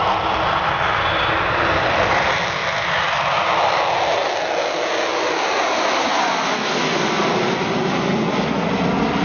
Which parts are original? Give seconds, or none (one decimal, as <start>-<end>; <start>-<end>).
0.0-9.2